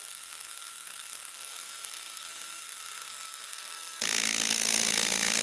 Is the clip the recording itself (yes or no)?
no